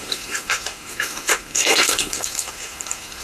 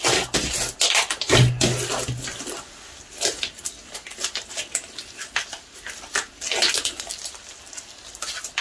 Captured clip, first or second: second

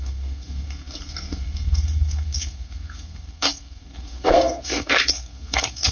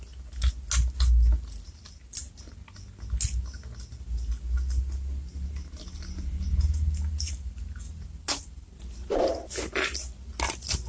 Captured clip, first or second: second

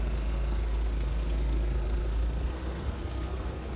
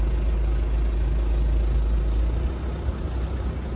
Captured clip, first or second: second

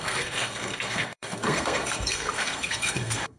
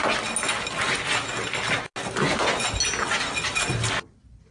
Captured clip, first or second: second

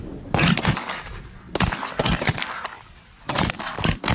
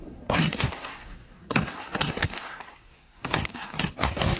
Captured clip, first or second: first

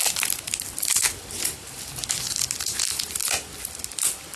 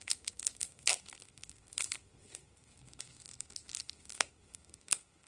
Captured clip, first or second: first